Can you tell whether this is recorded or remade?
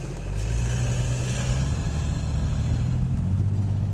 recorded